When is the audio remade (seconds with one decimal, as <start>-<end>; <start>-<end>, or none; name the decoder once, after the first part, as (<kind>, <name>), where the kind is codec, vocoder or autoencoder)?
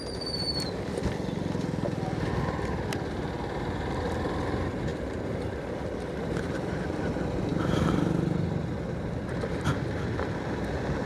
none